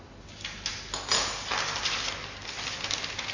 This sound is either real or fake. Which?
real